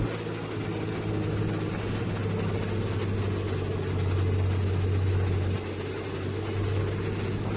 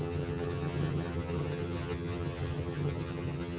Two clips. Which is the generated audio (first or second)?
second